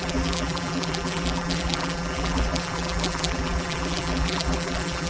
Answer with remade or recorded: remade